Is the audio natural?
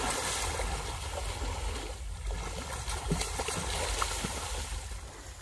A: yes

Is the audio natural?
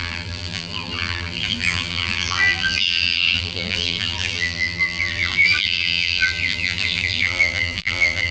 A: no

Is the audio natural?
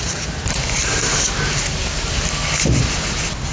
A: yes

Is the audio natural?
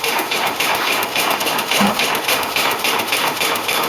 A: no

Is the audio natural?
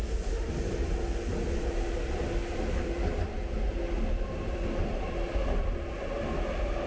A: yes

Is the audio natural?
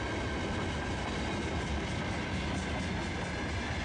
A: yes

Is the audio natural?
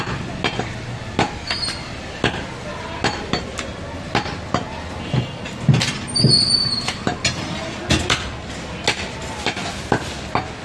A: yes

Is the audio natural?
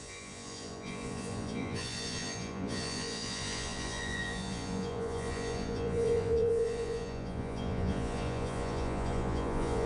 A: no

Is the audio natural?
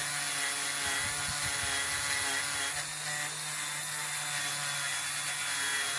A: yes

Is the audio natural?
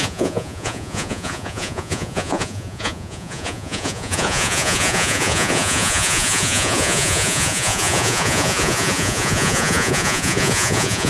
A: no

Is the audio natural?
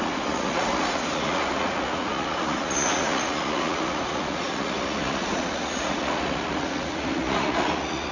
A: no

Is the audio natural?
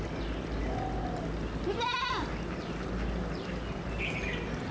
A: yes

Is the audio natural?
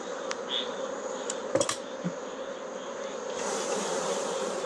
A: yes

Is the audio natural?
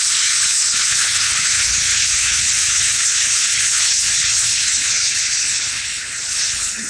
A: no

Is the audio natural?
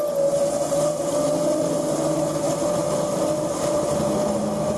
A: yes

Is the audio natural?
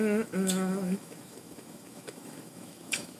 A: no